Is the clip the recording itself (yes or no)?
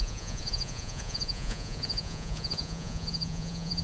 no